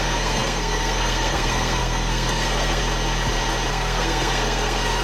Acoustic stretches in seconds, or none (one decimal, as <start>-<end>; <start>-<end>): 2.8-3.7